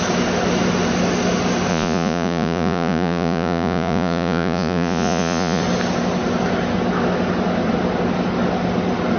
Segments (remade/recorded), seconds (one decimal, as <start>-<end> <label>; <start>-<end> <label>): 0.0-1.7 recorded; 1.7-5.6 remade; 5.6-9.2 recorded